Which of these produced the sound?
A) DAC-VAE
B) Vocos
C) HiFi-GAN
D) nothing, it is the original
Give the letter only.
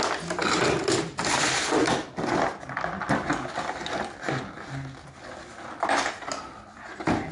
D